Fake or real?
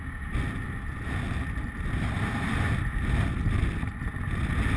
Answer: real